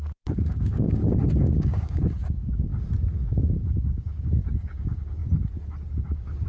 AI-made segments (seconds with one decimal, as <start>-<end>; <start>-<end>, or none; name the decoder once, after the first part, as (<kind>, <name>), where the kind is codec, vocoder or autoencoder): 0.0-1.0 (codec, DAC); 1.5-2.7; 3.3-5.2; 6.0-6.5